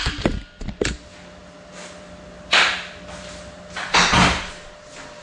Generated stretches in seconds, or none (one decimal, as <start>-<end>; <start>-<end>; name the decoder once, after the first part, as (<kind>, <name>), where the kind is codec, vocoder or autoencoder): none